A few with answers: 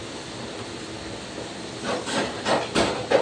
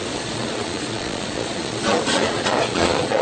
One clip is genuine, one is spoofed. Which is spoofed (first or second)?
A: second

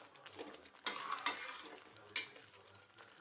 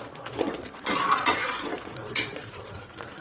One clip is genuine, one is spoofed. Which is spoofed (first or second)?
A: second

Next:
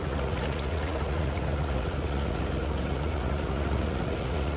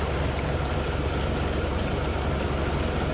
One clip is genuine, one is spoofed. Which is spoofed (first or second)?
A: first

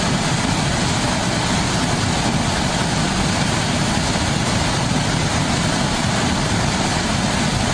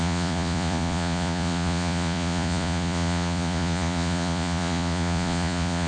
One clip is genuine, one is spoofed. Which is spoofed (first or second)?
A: second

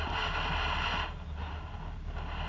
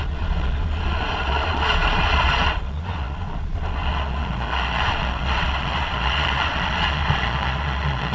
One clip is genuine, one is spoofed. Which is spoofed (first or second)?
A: second